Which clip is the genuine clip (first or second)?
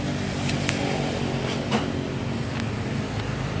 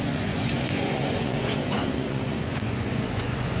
first